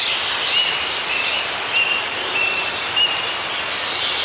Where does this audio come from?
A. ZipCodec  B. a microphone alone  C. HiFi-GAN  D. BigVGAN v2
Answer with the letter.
B